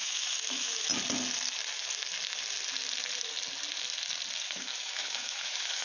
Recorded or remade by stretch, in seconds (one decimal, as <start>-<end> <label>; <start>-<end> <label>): 0.0-0.9 remade; 0.9-4.4 recorded; 4.4-5.8 remade